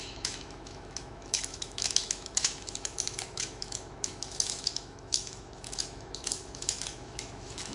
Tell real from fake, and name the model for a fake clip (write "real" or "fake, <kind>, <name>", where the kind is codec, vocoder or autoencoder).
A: fake, autoencoder, DAC-VAE